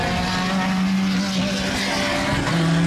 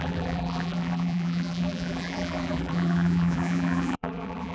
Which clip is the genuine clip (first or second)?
first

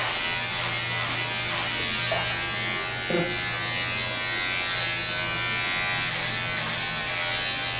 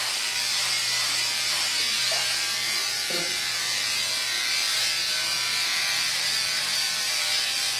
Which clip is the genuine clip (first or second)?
first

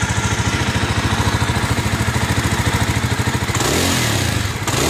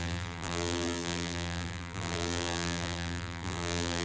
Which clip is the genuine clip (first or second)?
first